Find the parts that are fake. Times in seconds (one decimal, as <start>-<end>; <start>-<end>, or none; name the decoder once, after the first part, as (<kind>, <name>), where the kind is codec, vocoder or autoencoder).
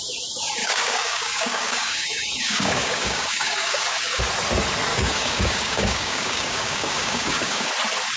0.6-4.2 (codec, DAC); 4.9-7.7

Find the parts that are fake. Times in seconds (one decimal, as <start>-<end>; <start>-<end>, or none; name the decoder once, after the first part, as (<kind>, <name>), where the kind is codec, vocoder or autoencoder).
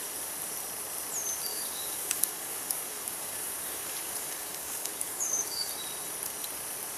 1.5-5.7 (codec, DAC)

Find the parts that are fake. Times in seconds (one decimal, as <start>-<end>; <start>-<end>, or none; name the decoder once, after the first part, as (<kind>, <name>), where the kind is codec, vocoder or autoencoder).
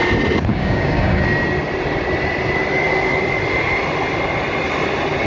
0.5-1.2 (codec, DAC)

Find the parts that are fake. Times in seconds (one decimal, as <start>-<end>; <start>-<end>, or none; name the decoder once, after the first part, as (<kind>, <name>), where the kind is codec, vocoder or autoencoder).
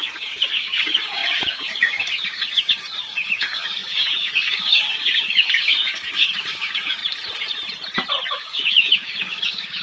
0.0-7.0 (codec, DAC); 8.3-9.8